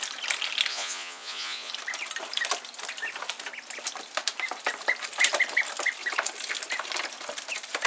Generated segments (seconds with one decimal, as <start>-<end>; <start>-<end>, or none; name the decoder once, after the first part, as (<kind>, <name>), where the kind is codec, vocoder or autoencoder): 0.7-1.7 (vocoder, Vocos)